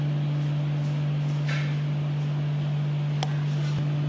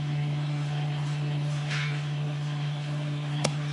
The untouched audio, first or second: first